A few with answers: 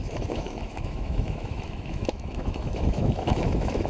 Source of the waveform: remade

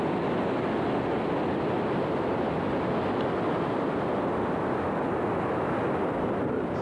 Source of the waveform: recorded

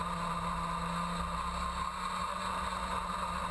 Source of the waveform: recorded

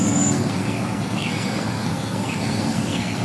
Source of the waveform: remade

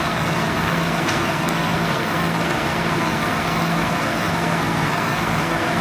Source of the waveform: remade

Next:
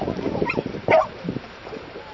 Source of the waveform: remade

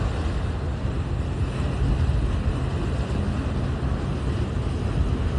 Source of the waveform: recorded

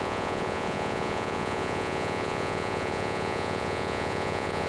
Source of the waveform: remade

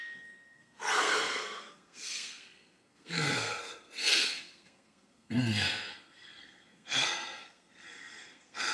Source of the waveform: remade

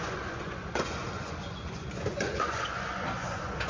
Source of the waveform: remade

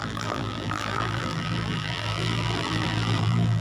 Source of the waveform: remade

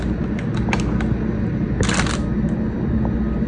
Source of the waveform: recorded